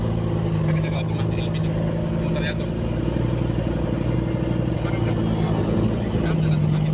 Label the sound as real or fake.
real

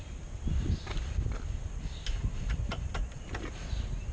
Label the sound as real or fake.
real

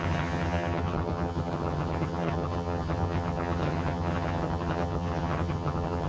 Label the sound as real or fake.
fake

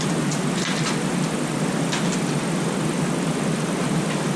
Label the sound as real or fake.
real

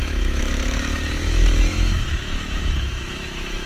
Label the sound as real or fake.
fake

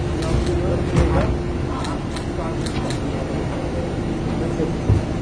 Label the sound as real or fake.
real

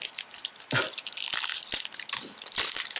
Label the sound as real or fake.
real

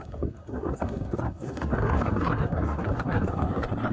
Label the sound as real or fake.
fake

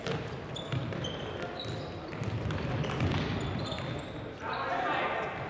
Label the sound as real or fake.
real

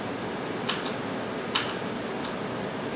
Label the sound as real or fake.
real